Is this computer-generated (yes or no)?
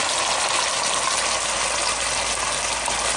no